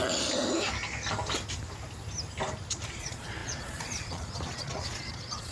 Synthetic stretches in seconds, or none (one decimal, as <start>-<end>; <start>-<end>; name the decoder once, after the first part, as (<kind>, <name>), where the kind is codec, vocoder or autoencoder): 3.0-5.5 (vocoder, Vocos)